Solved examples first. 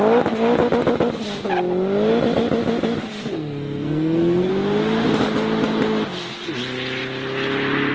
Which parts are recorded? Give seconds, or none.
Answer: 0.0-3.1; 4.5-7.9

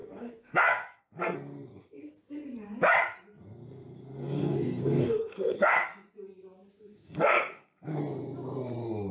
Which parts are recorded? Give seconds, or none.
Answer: 2.1-3.4; 5.8-6.8; 8.0-9.1